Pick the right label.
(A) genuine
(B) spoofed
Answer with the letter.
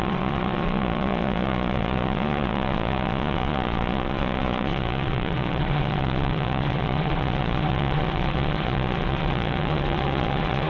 B